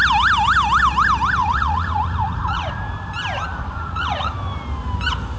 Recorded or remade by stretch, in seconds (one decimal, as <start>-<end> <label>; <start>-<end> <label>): 0.0-1.4 recorded; 1.4-2.8 remade; 2.8-3.5 recorded; 3.5-4.3 remade; 4.3-5.4 recorded